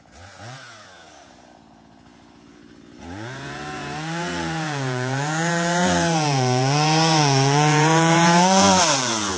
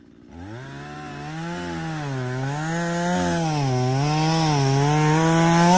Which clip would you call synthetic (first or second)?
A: first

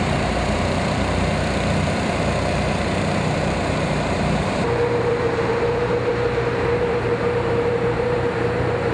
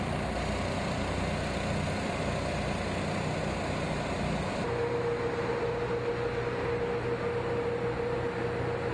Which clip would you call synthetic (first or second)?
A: first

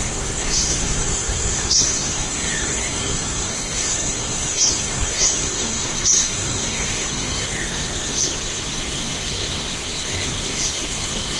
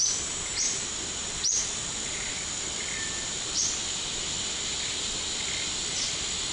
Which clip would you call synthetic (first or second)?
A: first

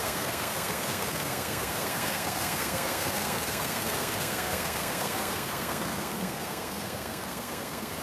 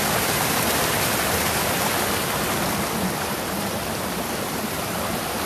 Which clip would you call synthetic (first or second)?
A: first